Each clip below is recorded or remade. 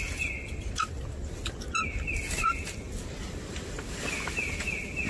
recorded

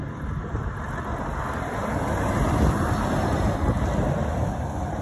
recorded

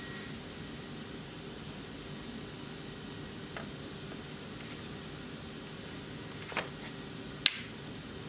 recorded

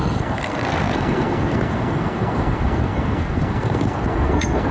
remade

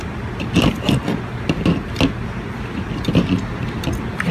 recorded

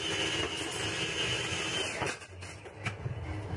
recorded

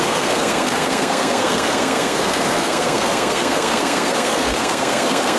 remade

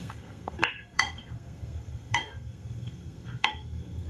remade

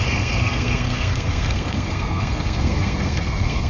remade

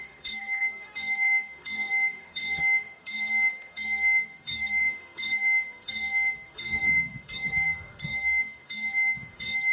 remade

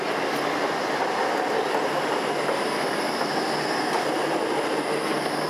recorded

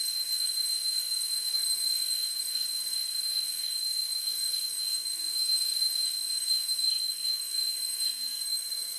remade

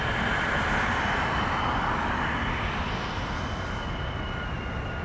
recorded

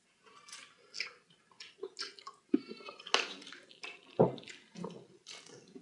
recorded